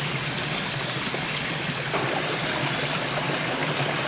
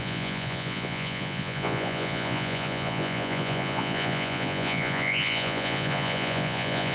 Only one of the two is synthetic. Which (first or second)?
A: second